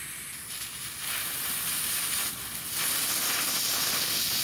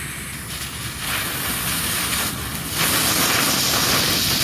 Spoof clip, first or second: first